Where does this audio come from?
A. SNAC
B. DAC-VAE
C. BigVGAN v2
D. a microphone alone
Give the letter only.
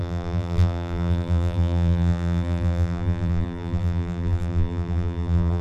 C